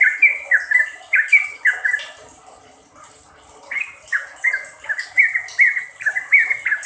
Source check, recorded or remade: recorded